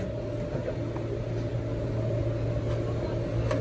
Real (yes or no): yes